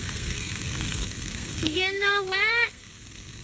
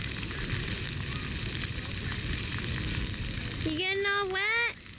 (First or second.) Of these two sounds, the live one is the second